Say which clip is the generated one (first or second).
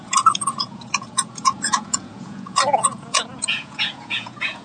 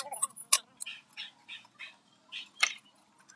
first